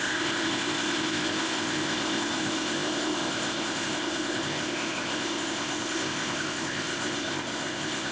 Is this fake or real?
fake